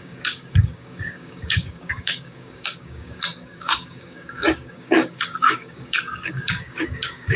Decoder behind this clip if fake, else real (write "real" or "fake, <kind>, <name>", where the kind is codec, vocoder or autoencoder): fake, codec, DAC